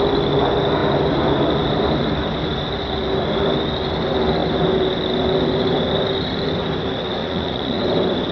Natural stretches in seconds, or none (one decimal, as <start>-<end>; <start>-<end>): 0.0-7.2; 7.8-8.3